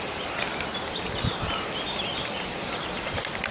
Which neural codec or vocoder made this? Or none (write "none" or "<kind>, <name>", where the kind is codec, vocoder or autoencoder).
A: none